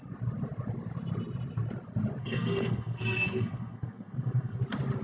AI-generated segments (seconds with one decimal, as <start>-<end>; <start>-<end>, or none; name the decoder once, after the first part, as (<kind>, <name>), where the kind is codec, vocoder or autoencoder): 2.2-4.6 (codec, SNAC)